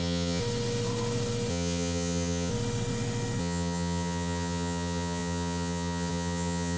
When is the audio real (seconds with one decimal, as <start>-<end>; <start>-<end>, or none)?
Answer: 0.4-1.5; 2.5-3.4